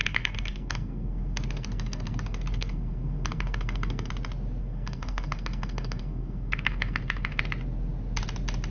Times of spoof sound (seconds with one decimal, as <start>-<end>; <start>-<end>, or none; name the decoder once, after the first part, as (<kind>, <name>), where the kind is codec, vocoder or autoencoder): 0.0-4.1 (codec, SNAC); 4.6-7.4